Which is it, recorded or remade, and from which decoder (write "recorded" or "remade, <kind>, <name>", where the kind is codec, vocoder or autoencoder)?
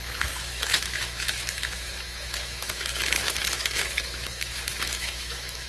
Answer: remade, autoencoder, DAC-VAE